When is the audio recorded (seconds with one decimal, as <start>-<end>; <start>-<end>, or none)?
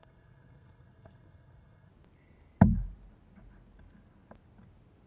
1.9-5.1